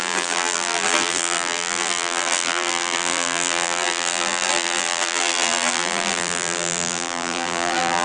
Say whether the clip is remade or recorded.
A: remade